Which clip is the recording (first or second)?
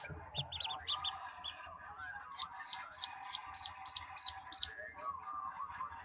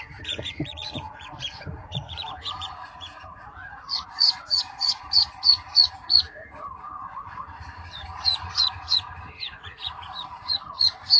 first